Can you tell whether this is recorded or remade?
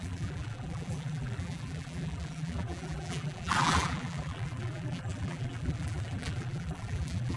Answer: remade